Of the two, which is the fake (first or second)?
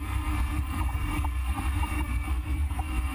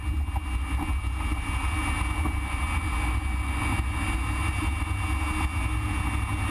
first